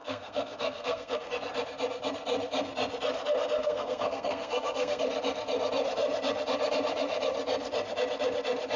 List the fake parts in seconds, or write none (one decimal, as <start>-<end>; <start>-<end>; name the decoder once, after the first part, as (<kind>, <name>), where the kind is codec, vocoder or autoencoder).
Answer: 0.0-1.3 (codec, SNAC); 3.6-5.0